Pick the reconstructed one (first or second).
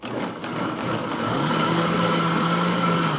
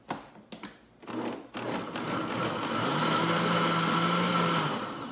first